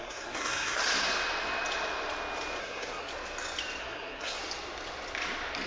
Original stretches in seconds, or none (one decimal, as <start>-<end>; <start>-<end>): 0.8-2.6; 3.1-3.8; 4.4-5.7